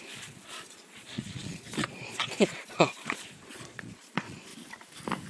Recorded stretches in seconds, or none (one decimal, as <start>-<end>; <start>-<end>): 4.5-5.3

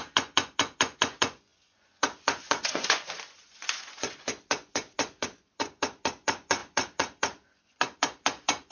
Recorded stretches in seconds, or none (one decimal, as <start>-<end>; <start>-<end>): none

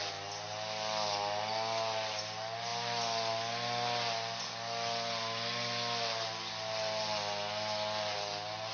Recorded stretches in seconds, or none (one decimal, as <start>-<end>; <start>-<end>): 0.0-8.7

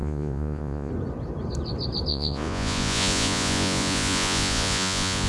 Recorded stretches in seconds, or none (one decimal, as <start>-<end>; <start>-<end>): 0.9-2.1